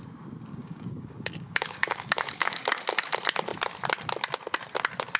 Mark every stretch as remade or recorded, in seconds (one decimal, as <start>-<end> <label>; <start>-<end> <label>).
0.0-0.5 recorded; 0.5-2.8 remade; 2.8-5.2 recorded